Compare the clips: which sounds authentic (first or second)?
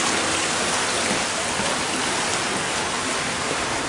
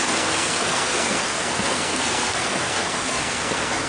first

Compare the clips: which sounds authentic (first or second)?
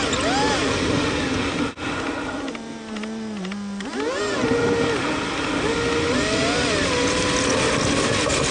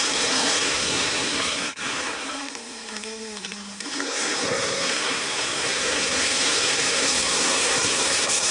first